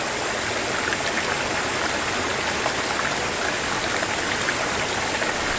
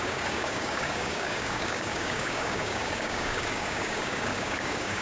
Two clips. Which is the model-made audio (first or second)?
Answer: second